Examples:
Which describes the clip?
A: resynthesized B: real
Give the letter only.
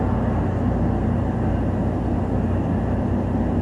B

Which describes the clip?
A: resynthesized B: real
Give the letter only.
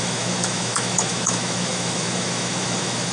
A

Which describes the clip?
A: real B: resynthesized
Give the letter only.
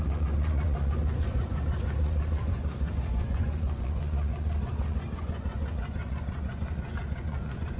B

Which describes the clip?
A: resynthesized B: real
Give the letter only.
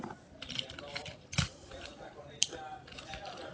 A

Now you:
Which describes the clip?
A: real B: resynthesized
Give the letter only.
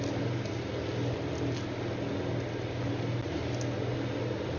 A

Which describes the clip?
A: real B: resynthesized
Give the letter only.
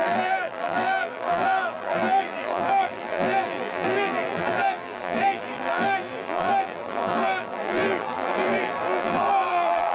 B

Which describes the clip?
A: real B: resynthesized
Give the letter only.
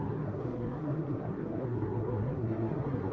B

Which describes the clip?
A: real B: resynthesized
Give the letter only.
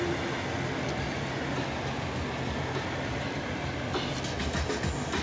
A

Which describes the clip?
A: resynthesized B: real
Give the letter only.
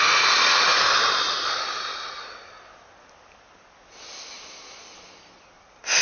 B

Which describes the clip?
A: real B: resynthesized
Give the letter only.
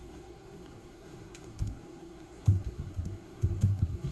B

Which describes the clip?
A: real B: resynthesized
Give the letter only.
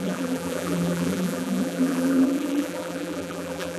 B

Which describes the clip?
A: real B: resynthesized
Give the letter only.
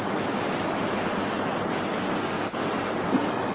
A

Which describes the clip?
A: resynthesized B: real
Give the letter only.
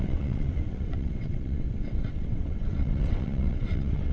A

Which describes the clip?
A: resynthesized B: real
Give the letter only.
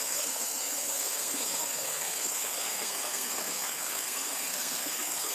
A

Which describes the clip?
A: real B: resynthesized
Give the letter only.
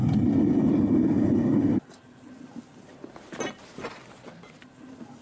A